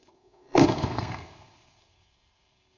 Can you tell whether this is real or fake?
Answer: fake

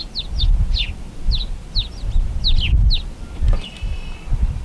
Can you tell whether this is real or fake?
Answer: real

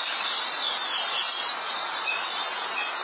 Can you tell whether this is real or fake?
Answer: fake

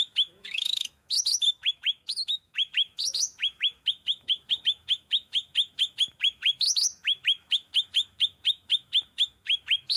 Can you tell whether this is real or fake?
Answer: fake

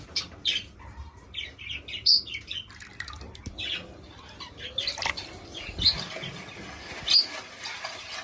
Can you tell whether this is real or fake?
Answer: real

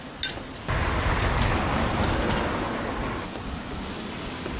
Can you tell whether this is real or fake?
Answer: real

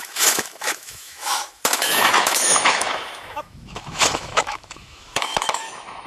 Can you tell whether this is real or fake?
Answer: fake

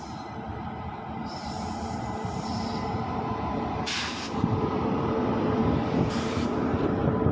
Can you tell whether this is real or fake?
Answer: fake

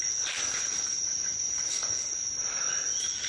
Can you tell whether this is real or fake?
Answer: real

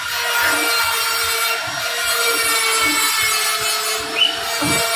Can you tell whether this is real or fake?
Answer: real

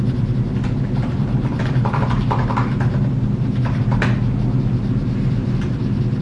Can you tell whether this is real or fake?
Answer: real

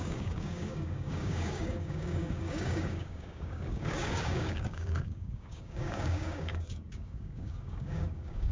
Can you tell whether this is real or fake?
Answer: fake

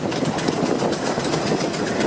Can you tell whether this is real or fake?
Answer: real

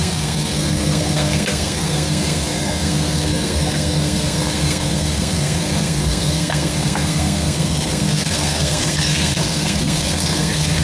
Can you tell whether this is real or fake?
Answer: fake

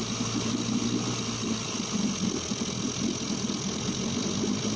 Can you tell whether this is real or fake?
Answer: real